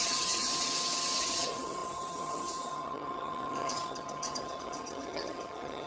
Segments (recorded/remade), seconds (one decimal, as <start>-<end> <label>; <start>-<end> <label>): 0.0-0.5 remade; 0.5-1.2 recorded; 1.2-5.9 remade